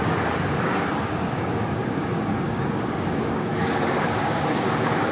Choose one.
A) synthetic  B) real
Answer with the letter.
A